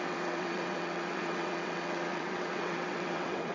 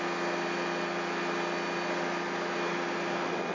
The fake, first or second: first